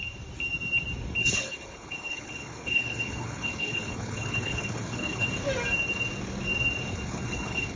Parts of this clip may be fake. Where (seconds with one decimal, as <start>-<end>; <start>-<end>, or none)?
1.2-5.3; 6.9-7.8